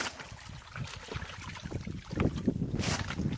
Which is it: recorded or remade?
recorded